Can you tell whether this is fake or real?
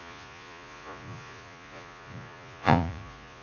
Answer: fake